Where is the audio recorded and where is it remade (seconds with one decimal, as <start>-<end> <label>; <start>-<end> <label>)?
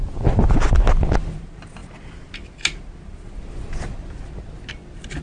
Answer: 0.0-5.2 recorded